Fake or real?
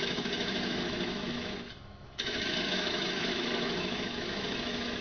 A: fake